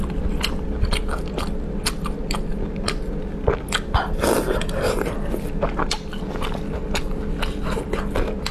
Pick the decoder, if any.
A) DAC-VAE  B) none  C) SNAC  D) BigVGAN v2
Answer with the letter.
B